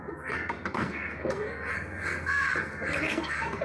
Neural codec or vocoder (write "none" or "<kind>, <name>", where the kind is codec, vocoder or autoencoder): codec, SNAC